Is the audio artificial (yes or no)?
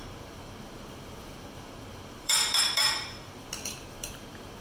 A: yes